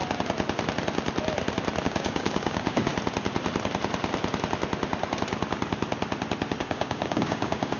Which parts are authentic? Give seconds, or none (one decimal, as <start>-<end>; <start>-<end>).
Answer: 0.0-1.8; 2.9-6.6